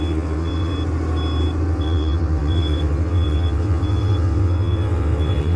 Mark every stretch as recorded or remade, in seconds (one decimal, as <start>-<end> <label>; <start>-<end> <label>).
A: 0.0-0.7 remade; 0.7-1.7 recorded; 1.7-5.6 remade